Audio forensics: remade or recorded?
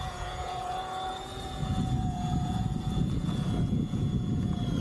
remade